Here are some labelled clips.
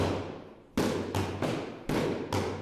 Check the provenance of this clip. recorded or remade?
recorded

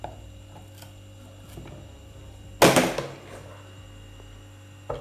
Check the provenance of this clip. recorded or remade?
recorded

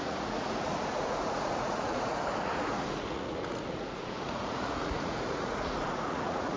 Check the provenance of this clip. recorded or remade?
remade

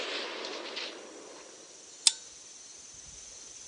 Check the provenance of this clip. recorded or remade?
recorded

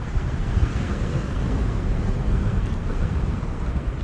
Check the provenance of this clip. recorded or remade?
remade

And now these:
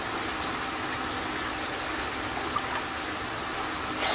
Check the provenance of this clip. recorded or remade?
recorded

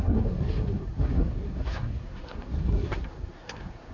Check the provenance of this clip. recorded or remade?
remade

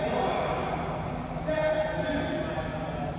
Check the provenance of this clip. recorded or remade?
recorded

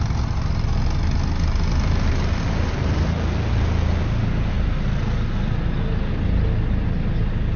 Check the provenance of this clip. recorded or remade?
recorded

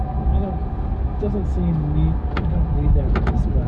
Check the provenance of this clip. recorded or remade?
recorded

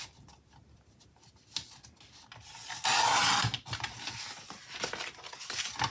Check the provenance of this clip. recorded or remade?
recorded